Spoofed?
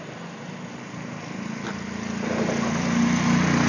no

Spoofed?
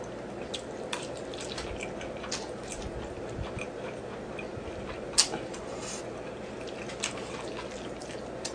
no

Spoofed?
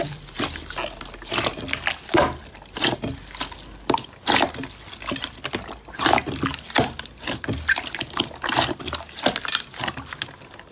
no